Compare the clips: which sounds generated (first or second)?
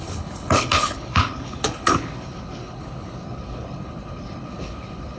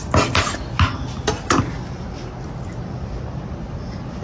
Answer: first